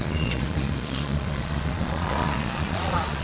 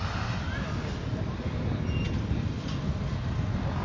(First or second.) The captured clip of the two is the second